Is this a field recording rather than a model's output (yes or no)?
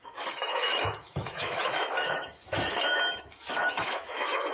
no